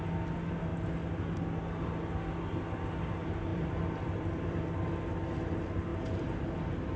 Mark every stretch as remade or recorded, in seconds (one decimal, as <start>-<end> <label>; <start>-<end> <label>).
0.0-3.5 recorded; 3.5-4.6 remade; 4.6-7.0 recorded